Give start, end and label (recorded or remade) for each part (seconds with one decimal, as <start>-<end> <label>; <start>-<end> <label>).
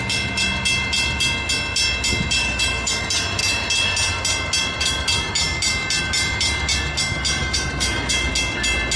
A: 0.0-2.4 recorded; 2.4-2.9 remade; 2.9-7.4 recorded; 7.4-8.3 remade; 8.3-9.0 recorded